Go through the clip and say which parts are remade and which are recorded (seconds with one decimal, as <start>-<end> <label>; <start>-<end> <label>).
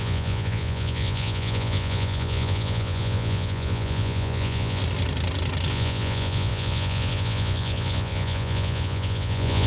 0.0-4.8 remade; 4.8-5.7 recorded; 5.7-9.7 remade